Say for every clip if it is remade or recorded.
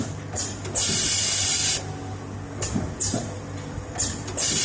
recorded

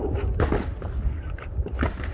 recorded